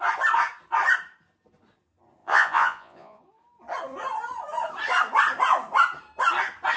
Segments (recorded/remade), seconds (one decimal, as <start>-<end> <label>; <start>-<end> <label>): 0.0-2.2 recorded; 2.2-3.2 remade; 3.2-6.8 recorded